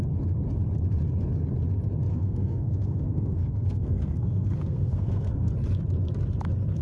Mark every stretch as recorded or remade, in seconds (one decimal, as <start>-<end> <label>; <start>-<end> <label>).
0.0-2.1 recorded; 2.1-5.5 remade; 5.5-6.8 recorded